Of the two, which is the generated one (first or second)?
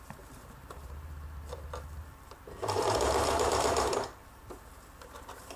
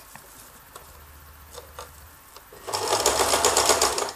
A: first